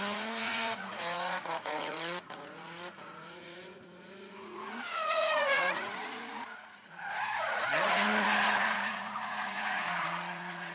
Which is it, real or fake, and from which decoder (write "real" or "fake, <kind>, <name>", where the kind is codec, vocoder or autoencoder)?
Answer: fake, vocoder, Vocos